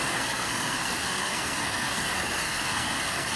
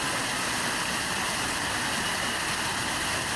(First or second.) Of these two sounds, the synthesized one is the first